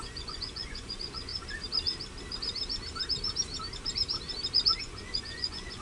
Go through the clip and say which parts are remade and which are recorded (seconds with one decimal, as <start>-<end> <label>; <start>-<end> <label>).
0.0-1.3 remade; 1.3-4.8 recorded; 4.8-5.8 remade